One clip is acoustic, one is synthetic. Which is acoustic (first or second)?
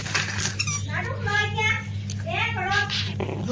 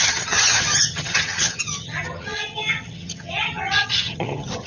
first